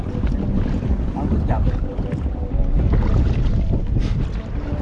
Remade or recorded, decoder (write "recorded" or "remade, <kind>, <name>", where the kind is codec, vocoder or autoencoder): recorded